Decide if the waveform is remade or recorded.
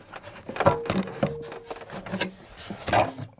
recorded